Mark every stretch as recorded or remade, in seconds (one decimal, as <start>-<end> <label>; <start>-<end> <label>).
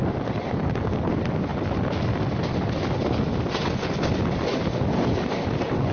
0.0-5.9 recorded